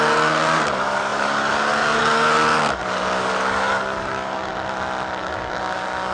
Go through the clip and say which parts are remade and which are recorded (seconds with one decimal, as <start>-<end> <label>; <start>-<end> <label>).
0.0-4.5 remade; 4.5-5.2 recorded; 5.2-6.1 remade